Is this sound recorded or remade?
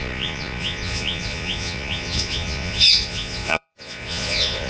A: remade